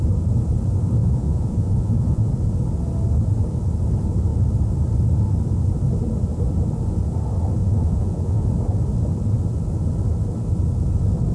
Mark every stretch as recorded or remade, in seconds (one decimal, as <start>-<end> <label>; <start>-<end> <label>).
0.0-1.0 recorded; 1.0-2.3 remade; 2.3-7.6 recorded; 7.6-8.5 remade; 8.5-11.3 recorded